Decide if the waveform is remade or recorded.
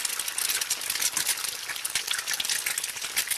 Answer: recorded